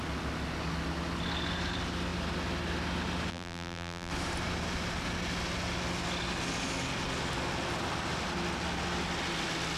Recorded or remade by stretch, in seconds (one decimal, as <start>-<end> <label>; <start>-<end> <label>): 0.0-3.3 recorded; 3.3-4.1 remade; 4.1-9.8 recorded